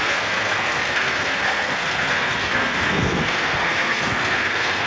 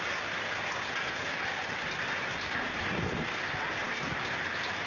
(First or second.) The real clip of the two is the second